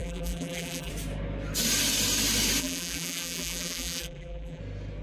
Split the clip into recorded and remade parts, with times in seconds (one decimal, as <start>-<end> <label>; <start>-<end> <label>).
0.0-0.9 remade; 0.9-2.6 recorded; 2.6-4.6 remade; 4.6-5.0 recorded